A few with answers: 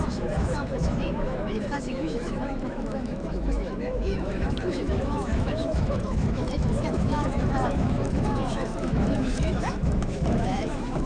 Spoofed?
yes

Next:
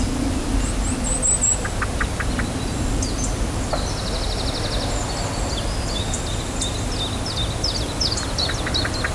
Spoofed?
no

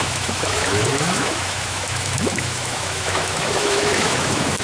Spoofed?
yes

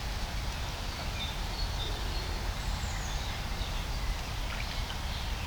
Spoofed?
no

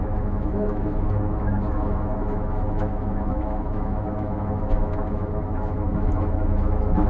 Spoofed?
yes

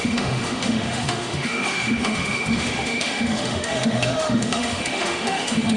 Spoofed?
yes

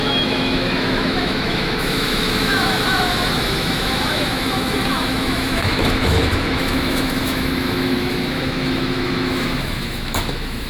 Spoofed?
yes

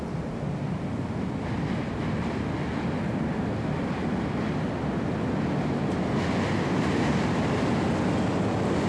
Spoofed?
no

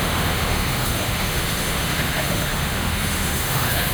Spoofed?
yes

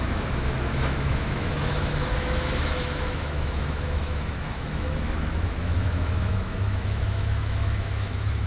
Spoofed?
yes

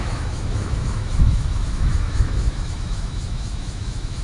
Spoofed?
yes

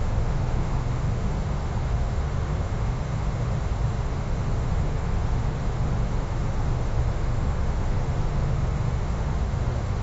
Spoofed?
yes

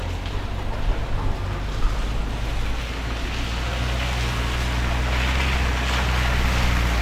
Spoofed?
no